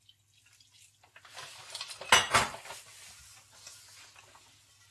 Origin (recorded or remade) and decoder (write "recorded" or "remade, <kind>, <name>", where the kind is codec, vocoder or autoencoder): recorded